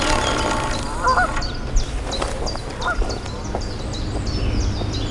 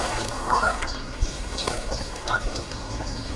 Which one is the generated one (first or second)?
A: second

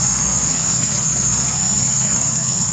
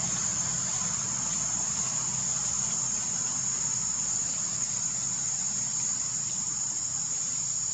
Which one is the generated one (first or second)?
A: first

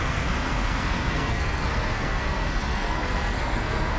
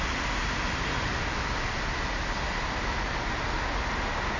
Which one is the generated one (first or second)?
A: first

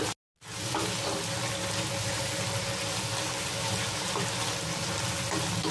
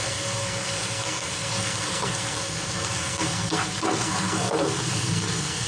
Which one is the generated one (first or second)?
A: second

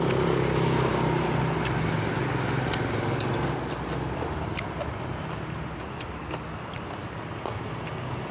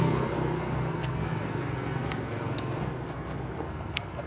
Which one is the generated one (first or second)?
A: second